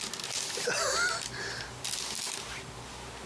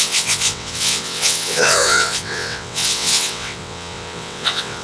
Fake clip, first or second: second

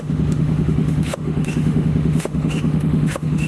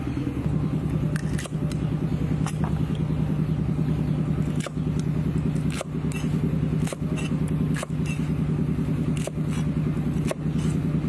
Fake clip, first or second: first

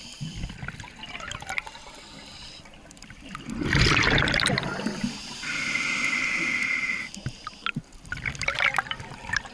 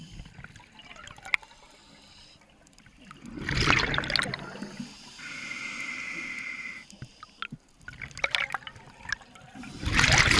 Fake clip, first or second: first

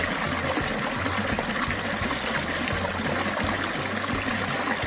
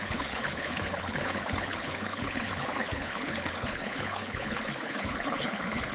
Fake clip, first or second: second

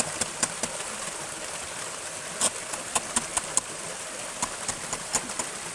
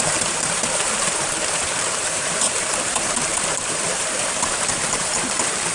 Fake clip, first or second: second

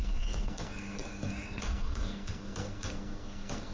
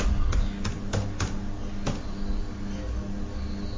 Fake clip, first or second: first